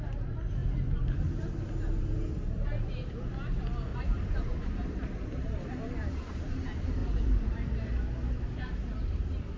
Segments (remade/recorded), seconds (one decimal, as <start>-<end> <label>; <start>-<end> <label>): 0.0-0.6 recorded; 0.6-1.7 remade; 1.7-3.9 recorded; 3.9-6.3 remade; 6.3-7.0 recorded; 7.0-8.0 remade; 8.0-9.6 recorded